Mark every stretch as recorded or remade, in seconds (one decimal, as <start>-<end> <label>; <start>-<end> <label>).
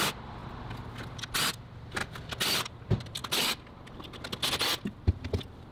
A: 0.0-0.4 remade; 0.4-1.5 recorded; 1.5-2.0 remade; 2.0-2.7 recorded; 2.7-3.2 remade; 3.2-5.1 recorded; 5.1-5.7 remade